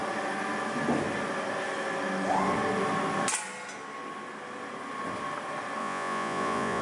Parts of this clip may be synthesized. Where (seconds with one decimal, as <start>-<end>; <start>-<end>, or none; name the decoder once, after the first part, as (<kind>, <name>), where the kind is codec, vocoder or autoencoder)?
5.8-6.8 (vocoder, Vocos)